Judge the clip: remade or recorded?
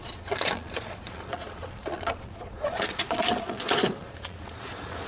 remade